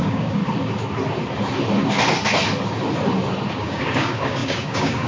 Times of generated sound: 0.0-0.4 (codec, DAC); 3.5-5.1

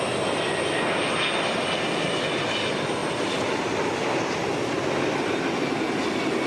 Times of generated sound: none

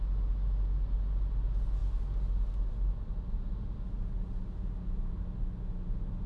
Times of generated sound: none

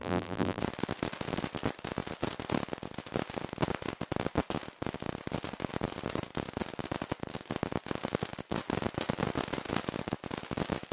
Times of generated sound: 0.0-0.6 (vocoder, BigVGAN v2)

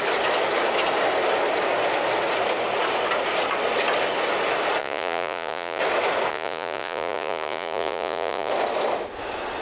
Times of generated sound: 4.8-5.8 (vocoder, Vocos); 6.3-8.5

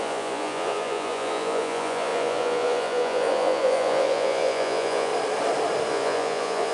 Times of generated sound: 0.0-5.1 (vocoder, Vocos); 5.9-6.7